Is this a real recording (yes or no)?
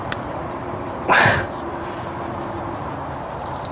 yes